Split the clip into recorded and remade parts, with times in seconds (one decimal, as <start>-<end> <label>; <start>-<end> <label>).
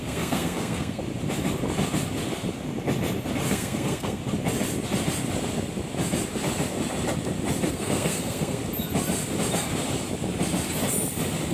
0.0-1.0 remade; 1.0-3.5 recorded; 3.5-4.2 remade; 4.2-7.7 recorded; 7.7-8.6 remade; 8.6-11.5 recorded